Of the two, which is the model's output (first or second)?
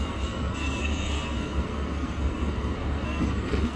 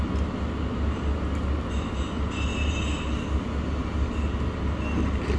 first